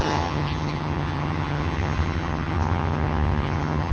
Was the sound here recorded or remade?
remade